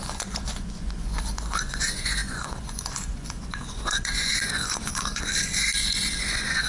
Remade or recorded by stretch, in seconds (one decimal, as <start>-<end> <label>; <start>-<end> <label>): 0.0-6.7 remade